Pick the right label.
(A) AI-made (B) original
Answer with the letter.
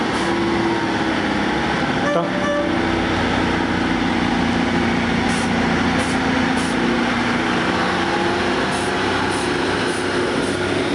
B